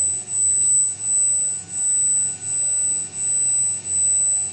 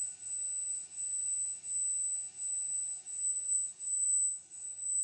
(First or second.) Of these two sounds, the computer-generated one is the second